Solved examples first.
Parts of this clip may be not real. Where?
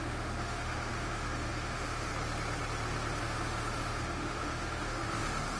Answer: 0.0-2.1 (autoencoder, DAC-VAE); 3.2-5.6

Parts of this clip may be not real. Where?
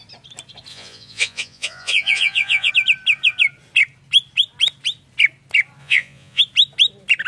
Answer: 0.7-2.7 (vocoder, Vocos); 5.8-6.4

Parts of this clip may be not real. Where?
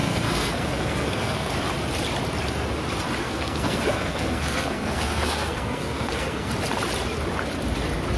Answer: 0.0-1.5 (codec, SNAC); 3.2-6.5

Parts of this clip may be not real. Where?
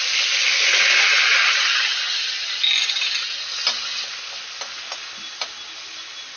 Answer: none